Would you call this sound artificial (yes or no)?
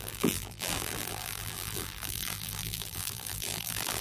yes